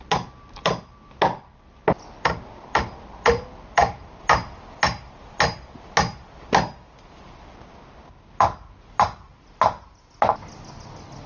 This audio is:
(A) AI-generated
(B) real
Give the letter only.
B